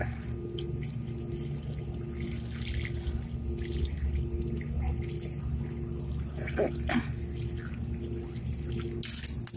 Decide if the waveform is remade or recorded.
recorded